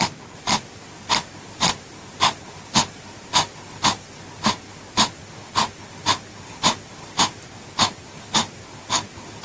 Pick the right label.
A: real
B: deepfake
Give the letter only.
A